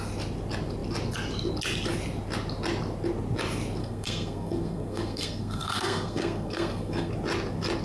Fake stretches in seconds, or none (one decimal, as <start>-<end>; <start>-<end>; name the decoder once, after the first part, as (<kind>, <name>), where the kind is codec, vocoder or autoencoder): 3.8-7.1 (codec, SNAC)